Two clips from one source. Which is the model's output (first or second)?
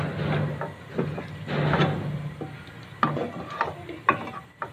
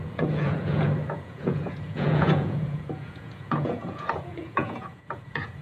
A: second